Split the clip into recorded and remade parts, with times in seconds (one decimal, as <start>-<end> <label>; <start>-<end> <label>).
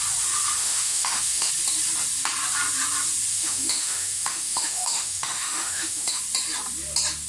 0.0-0.6 recorded; 0.6-1.5 remade; 1.5-3.3 recorded; 3.3-6.2 remade; 6.2-7.3 recorded